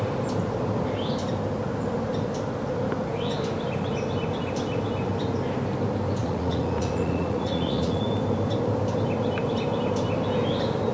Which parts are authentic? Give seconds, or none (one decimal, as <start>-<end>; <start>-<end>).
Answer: 0.0-6.2; 8.0-10.9